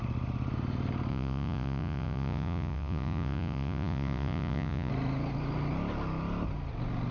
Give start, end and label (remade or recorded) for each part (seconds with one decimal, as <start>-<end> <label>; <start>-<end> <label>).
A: 0.0-1.1 recorded; 1.1-4.9 remade; 4.9-7.1 recorded